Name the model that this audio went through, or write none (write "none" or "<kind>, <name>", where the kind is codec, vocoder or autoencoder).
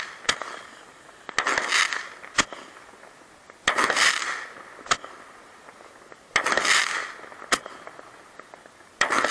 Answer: none